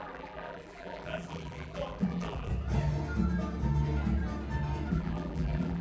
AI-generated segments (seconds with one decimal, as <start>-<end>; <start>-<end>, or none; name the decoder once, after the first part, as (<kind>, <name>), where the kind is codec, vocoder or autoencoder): 0.0-2.5 (vocoder, BigVGAN v2); 4.9-5.8